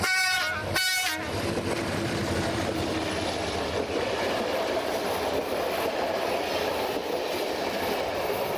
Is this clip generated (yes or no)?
yes